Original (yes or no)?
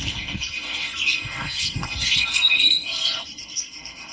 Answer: no